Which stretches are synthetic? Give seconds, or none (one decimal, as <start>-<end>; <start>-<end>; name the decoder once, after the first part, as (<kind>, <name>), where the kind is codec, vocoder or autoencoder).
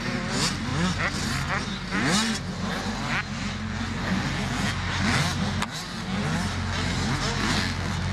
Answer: none